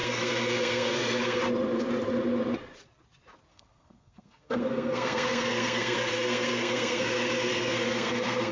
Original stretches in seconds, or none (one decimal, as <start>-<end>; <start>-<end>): 1.4-3.5